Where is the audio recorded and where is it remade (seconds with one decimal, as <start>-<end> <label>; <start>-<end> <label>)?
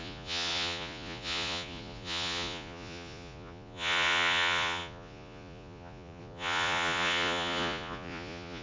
0.0-8.6 remade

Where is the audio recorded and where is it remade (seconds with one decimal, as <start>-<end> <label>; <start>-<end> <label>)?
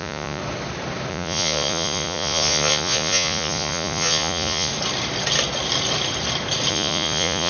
0.0-0.4 remade; 0.4-1.1 recorded; 1.1-4.7 remade; 4.7-6.7 recorded; 6.7-7.5 remade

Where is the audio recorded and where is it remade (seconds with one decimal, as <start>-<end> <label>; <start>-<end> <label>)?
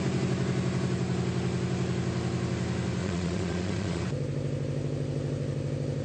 0.0-3.0 recorded; 3.0-4.0 remade; 4.0-6.0 recorded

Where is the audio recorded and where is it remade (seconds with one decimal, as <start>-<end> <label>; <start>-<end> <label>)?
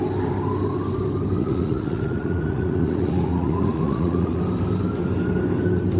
0.0-1.4 recorded; 1.4-4.4 remade; 4.4-6.0 recorded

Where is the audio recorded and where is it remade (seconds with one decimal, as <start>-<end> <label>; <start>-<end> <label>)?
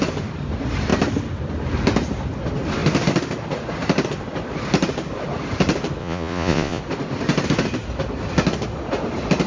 0.0-6.0 recorded; 6.0-6.8 remade; 6.8-9.5 recorded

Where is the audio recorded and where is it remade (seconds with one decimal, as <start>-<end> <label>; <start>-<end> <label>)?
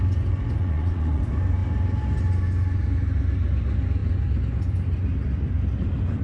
0.0-0.6 recorded; 0.6-1.2 remade; 1.2-6.2 recorded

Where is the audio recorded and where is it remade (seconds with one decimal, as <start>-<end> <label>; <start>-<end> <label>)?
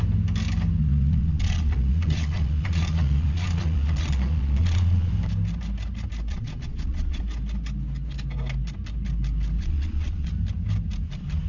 0.0-0.8 recorded; 0.8-5.1 remade; 5.1-6.3 recorded; 6.3-7.2 remade; 7.2-9.6 recorded; 9.6-10.3 remade; 10.3-11.5 recorded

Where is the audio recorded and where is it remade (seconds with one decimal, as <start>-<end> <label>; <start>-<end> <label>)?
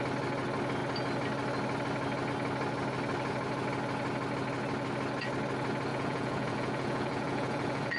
0.0-5.9 recorded; 5.9-8.0 remade